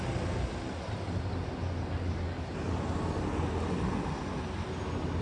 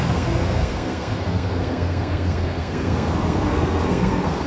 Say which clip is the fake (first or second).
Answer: second